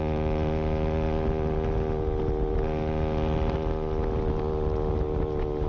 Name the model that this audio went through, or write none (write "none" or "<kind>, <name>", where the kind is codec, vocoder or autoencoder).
none